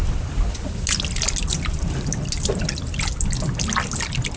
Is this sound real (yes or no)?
yes